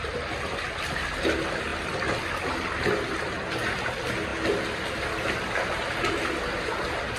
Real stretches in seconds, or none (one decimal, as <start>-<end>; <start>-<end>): 0.0-7.2

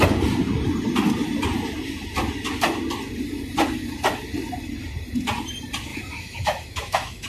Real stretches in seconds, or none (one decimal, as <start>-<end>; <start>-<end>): 0.0-5.9

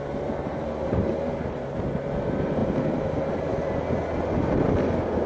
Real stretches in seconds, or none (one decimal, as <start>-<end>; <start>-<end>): 0.0-5.3

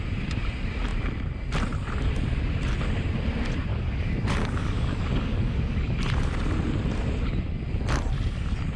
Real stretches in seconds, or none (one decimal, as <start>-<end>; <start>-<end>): 0.0-3.7; 6.0-8.8

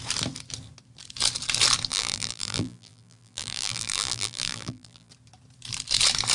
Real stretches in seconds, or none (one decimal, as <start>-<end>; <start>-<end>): 0.0-1.9; 5.1-6.3

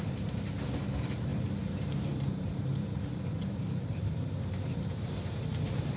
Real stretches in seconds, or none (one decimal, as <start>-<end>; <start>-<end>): 0.0-1.3; 4.9-6.0